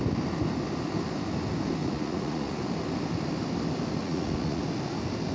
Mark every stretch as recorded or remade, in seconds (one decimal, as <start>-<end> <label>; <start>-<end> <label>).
0.0-1.8 recorded; 1.8-2.6 remade; 2.6-4.0 recorded; 4.0-4.6 remade; 4.6-5.3 recorded